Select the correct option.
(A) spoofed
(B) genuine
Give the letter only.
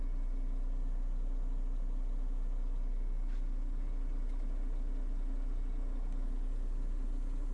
B